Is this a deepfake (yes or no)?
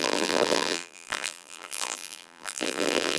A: yes